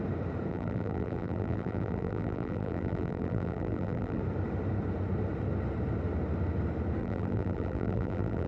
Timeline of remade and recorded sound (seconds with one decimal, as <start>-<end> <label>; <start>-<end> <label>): 0.0-0.5 recorded; 0.5-4.2 remade; 4.2-7.0 recorded; 7.0-8.5 remade